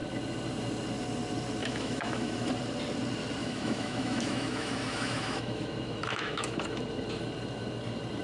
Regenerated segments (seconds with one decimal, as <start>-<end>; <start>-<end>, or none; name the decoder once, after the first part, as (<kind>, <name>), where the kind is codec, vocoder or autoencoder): 1.6-2.5 (autoencoder, DAC-VAE); 3.4-6.8